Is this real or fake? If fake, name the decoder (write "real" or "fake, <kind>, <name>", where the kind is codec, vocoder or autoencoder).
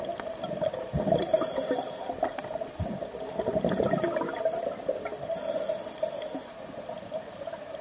real